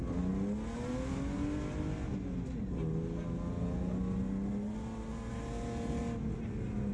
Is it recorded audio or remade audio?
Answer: recorded